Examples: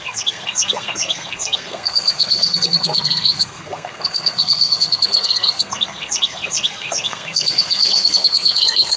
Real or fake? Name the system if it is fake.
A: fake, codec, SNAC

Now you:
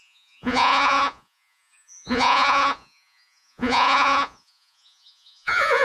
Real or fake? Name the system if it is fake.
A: fake, vocoder, Vocos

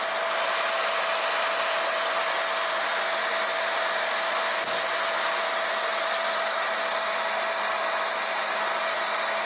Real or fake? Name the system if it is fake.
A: real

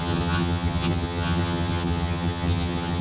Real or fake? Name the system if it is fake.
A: fake, vocoder, HiFi-GAN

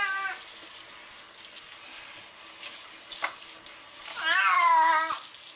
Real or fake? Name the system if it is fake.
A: real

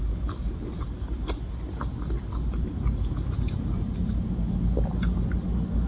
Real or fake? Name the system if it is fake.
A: real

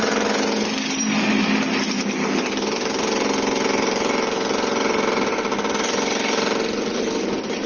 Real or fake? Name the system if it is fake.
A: real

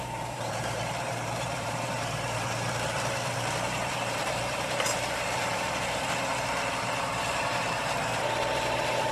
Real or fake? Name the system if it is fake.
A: fake, vocoder, BigVGAN v2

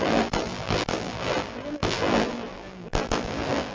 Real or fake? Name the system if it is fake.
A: fake, vocoder, BigVGAN v2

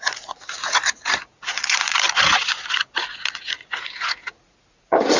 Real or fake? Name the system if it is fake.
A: fake, vocoder, Vocos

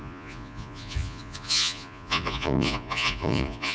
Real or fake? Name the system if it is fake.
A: fake, vocoder, Vocos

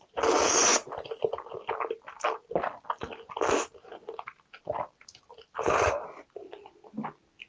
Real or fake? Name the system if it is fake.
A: real